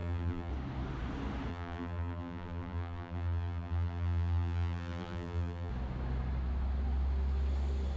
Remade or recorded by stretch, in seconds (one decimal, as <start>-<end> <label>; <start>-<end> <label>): 0.0-0.5 remade; 0.5-1.5 recorded; 1.5-5.7 remade; 5.7-8.0 recorded